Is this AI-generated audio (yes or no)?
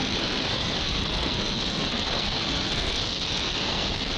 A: yes